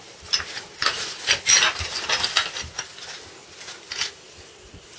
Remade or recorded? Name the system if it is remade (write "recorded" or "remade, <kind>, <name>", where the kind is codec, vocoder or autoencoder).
recorded